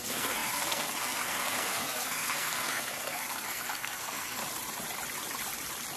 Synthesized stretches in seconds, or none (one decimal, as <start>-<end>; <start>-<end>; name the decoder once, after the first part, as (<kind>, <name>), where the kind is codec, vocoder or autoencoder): 0.0-4.4 (codec, SNAC)